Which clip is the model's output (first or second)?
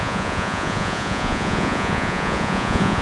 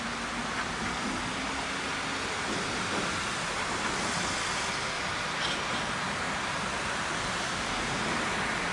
first